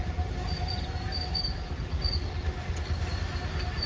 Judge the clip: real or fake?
real